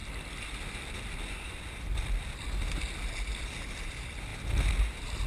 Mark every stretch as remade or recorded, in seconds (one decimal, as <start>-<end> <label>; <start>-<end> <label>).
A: 0.0-5.3 recorded